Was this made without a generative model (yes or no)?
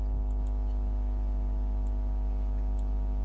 yes